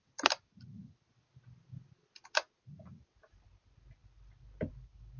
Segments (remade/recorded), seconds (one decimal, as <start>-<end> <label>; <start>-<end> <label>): 0.0-5.2 recorded